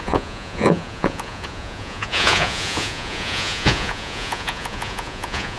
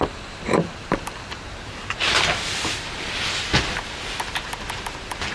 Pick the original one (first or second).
second